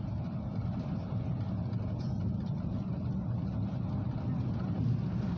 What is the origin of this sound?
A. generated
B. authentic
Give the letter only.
B